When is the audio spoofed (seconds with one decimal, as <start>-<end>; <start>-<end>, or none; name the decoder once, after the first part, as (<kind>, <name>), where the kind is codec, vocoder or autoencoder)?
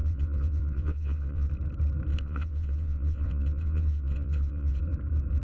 0.0-1.5 (vocoder, WaveNeXt); 2.1-4.8